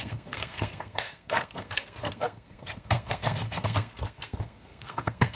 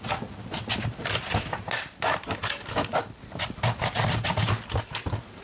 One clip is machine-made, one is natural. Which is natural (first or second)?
second